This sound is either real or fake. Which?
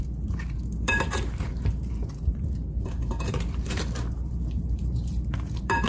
fake